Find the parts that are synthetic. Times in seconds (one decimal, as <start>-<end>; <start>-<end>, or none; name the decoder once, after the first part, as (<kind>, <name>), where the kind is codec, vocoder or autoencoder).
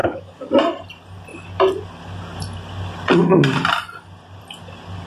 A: 0.0-0.5 (codec, DAC)